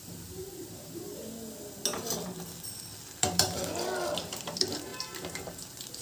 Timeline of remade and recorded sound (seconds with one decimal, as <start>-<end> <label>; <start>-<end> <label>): 0.0-1.2 remade; 1.2-3.2 recorded; 3.2-3.6 remade; 3.6-4.2 recorded; 4.2-6.0 remade